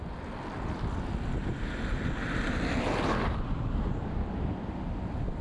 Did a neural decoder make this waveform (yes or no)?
no